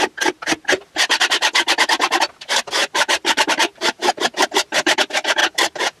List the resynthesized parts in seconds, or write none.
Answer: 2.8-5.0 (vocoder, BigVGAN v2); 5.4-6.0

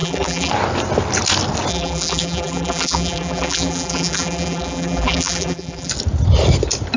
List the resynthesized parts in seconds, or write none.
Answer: 0.0-0.5 (vocoder, BigVGAN v2); 1.7-5.9

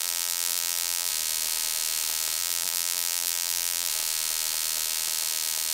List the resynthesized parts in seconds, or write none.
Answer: 0.0-1.1 (vocoder, BigVGAN v2); 2.4-3.9

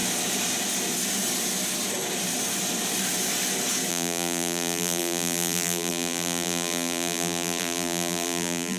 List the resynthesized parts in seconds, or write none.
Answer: 3.9-8.8 (vocoder, BigVGAN v2)